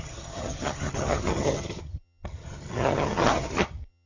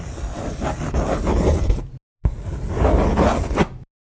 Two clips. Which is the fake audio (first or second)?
first